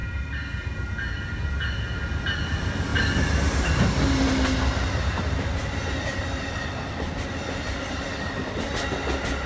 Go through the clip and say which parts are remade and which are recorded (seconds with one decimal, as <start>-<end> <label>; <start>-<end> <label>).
0.0-9.5 recorded